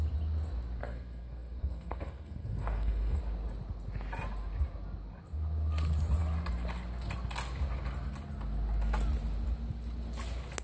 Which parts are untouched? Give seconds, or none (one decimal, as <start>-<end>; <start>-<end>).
0.0-0.8; 3.2-10.6